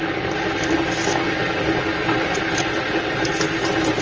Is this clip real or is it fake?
real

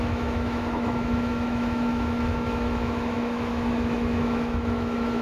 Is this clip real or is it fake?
fake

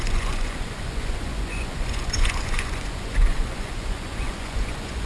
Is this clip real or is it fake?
fake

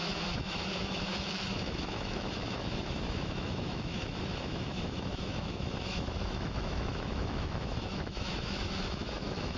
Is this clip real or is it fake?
fake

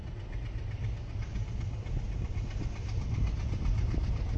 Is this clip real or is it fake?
real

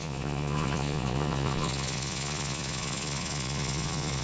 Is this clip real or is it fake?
fake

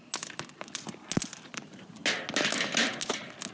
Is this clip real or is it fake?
real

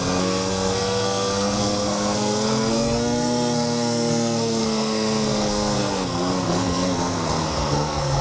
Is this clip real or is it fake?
fake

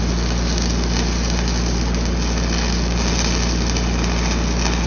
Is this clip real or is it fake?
real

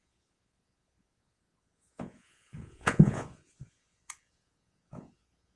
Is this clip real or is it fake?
fake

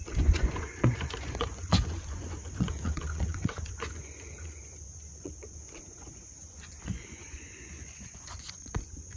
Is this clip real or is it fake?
fake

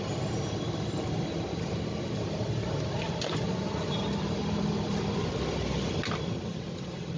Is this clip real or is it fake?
fake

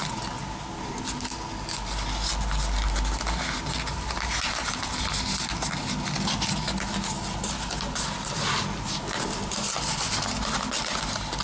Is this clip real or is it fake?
real